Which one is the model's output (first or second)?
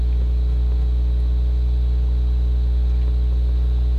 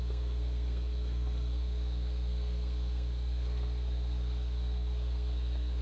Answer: second